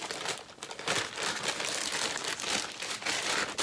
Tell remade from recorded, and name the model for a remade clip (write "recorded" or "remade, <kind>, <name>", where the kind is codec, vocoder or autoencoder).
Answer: recorded